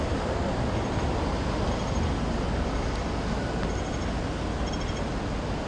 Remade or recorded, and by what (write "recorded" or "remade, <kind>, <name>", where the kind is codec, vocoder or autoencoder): recorded